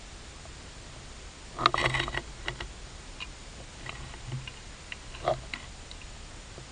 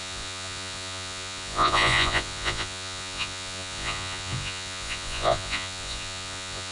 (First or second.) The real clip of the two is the first